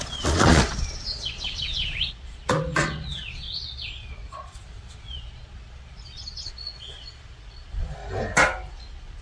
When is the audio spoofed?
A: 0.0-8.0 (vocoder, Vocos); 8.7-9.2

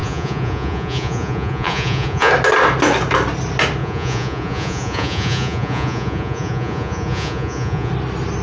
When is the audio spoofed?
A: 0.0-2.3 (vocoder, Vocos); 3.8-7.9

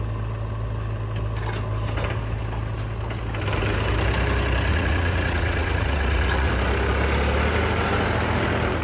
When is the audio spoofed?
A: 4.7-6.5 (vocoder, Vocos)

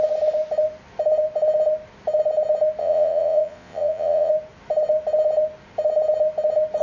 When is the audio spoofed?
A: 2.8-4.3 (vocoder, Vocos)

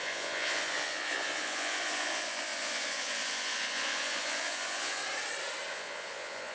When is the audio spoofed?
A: 0.0-5.0 (vocoder, Vocos); 5.7-6.5

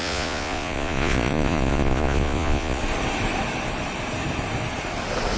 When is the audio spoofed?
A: 0.0-2.8 (vocoder, Vocos)

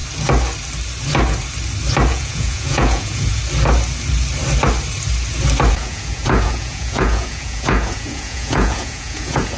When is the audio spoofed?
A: 2.1-3.4 (vocoder, Vocos); 5.7-9.6

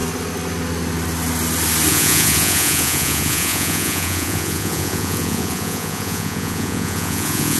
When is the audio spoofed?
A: 1.9-7.6 (vocoder, Vocos)